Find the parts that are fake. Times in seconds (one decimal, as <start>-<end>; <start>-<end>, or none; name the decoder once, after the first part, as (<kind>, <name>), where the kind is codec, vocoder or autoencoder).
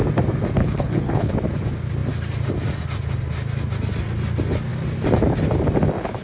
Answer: 0.6-1.3 (codec, HILCodec)